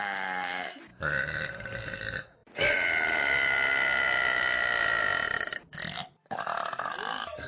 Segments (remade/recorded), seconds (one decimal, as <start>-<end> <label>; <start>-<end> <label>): 0.0-7.5 recorded